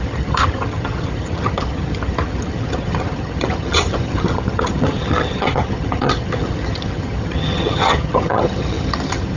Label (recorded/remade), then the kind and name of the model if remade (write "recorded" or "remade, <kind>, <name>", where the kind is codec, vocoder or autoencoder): remade, vocoder, HiFi-GAN